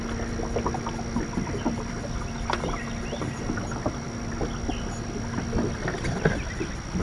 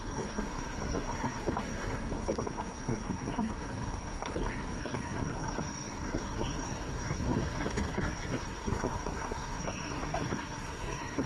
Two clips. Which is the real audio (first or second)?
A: first